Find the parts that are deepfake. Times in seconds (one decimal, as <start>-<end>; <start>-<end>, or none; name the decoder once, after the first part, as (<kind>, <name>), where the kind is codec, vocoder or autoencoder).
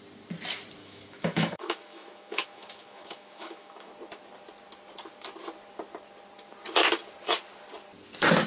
0.8-3.9 (autoencoder, DAC-VAE)